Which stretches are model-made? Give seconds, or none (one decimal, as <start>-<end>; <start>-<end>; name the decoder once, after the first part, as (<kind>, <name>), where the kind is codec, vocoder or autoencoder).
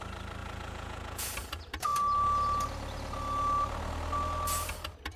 0.4-1.3 (vocoder, Vocos)